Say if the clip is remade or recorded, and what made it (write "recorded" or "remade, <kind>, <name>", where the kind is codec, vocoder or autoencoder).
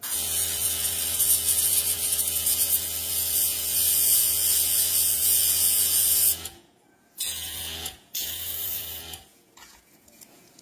remade, vocoder, Vocos